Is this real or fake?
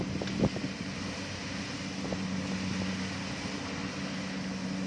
real